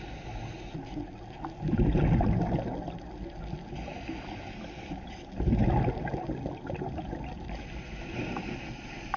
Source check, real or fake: real